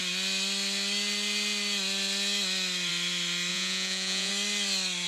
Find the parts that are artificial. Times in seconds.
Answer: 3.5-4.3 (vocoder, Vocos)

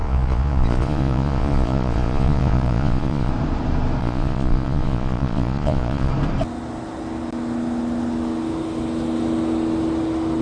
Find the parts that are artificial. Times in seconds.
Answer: 0.0-3.3 (vocoder, Vocos); 4.0-6.1

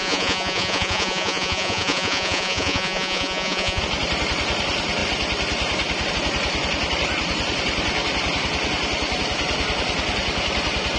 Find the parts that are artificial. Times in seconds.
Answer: 0.0-3.8 (vocoder, Vocos)

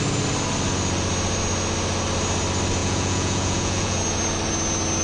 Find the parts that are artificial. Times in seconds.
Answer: 2.8-4.0 (vocoder, Vocos)